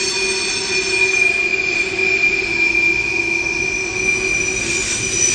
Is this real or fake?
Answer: real